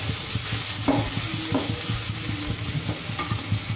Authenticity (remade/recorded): recorded